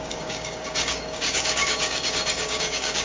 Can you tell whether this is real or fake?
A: fake